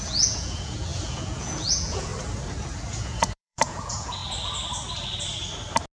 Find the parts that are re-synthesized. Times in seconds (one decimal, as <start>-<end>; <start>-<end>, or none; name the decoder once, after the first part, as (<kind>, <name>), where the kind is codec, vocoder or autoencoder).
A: 0.0-2.1 (vocoder, Vocos); 3.0-4.2